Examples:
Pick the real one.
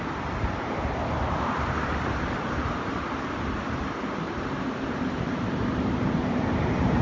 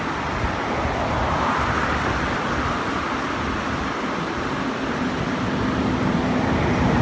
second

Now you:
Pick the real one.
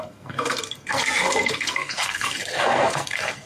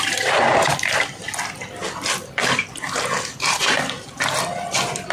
second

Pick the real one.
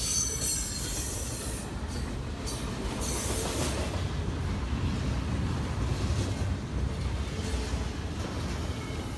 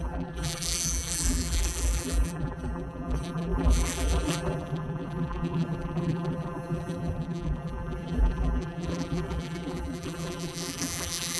first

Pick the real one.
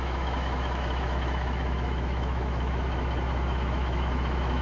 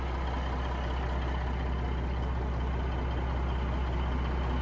second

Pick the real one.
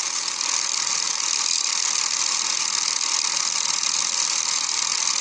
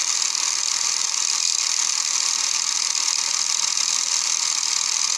first